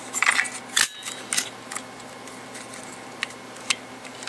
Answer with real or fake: real